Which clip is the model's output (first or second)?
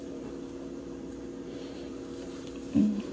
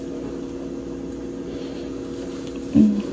first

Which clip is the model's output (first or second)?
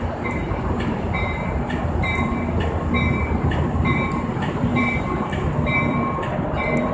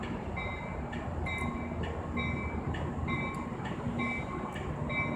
first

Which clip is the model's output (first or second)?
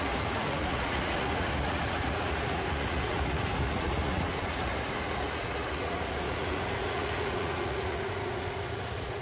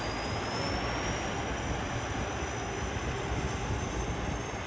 first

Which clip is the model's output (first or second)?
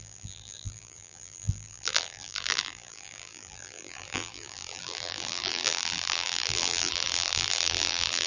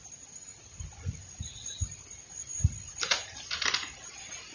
first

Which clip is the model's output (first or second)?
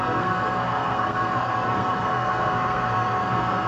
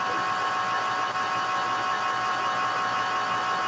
first